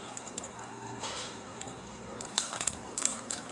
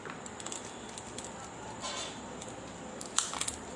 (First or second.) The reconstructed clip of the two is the first